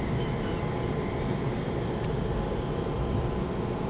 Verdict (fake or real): real